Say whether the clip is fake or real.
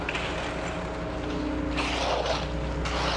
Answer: real